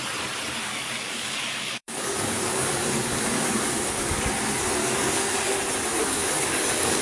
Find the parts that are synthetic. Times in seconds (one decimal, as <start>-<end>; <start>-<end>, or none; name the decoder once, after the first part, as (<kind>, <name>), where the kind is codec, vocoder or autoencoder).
0.6-4.2 (codec, DAC); 4.8-5.5; 6.0-7.0